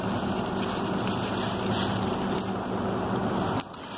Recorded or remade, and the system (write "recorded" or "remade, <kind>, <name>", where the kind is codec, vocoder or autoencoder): recorded